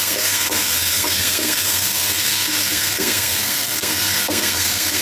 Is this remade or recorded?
remade